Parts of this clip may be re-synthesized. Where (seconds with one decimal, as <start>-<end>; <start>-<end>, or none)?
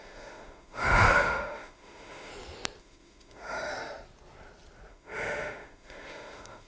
0.0-2.3; 2.8-3.7; 4.9-6.7